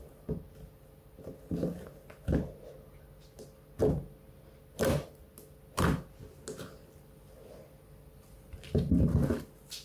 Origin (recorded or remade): recorded